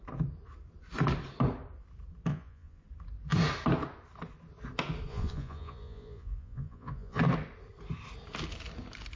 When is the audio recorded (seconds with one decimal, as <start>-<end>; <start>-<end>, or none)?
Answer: 0.0-2.3; 2.8-5.1; 7.2-9.2